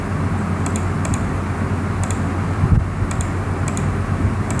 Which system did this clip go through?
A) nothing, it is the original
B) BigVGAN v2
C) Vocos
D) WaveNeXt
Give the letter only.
A